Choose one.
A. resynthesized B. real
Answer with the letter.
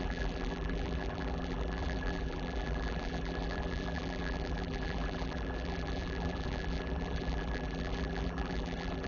A